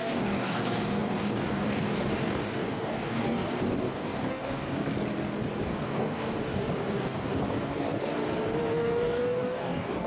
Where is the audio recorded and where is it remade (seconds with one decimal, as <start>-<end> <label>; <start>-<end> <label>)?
0.0-4.9 remade; 4.9-5.6 recorded; 5.6-8.2 remade; 8.2-8.7 recorded; 8.7-10.1 remade